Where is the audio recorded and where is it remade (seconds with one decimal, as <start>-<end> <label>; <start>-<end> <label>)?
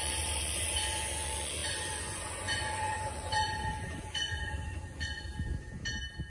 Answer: 0.0-5.3 remade; 5.3-6.3 recorded